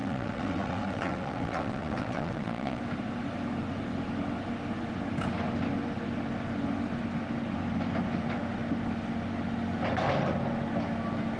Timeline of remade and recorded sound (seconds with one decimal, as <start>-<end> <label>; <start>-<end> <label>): 0.0-2.8 remade; 2.8-11.4 recorded